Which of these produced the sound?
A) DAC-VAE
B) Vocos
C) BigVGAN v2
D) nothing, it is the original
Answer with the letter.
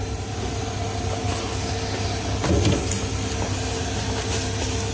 D